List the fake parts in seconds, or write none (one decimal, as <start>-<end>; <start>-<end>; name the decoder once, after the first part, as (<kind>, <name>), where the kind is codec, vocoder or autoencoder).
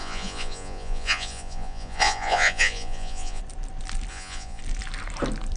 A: 0.0-3.4 (vocoder, Vocos); 4.1-4.6